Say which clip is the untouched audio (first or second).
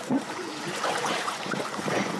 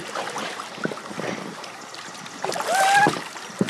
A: second